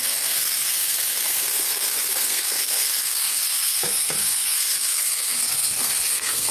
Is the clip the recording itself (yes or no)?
no